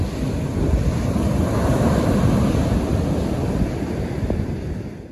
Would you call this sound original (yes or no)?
yes